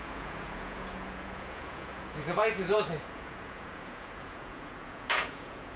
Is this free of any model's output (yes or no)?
no